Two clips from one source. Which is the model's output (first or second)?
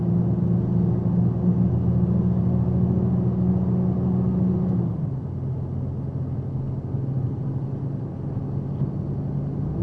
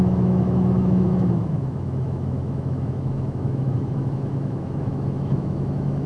second